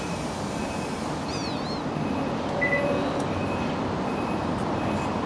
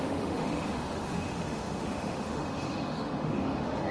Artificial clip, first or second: second